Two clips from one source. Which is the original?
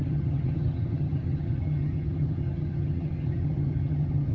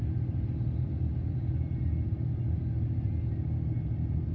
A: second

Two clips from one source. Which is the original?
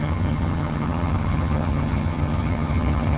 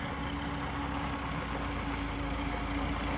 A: second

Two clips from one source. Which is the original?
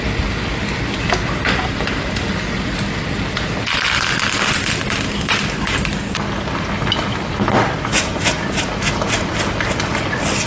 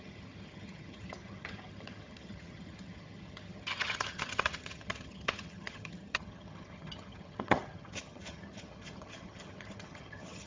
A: first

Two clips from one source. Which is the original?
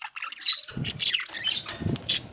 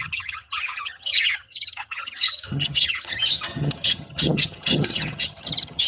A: first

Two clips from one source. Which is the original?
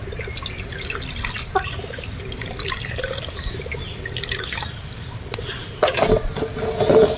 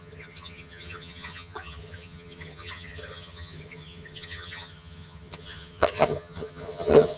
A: first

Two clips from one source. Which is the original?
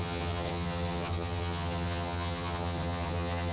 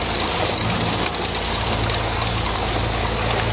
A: second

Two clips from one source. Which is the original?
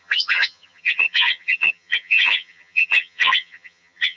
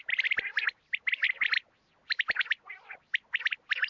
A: second